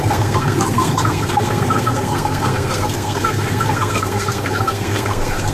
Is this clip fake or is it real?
fake